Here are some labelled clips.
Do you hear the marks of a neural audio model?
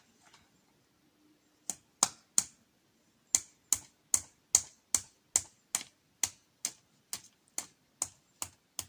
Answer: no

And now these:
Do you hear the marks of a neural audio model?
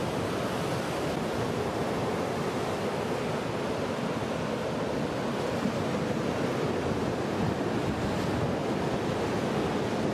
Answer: no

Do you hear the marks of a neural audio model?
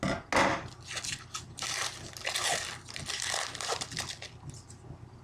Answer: no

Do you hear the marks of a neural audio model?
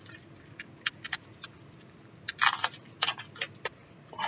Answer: no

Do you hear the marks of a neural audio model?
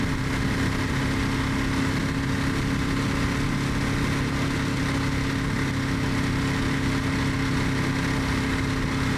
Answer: no